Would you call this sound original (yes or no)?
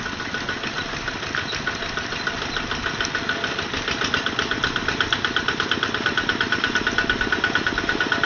yes